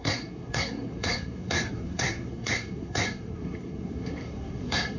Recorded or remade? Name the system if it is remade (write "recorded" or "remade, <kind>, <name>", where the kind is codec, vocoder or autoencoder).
remade, codec, SNAC